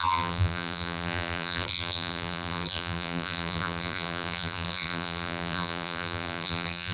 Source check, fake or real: fake